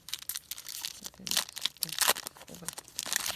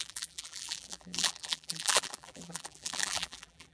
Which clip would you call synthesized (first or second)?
second